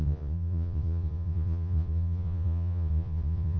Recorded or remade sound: remade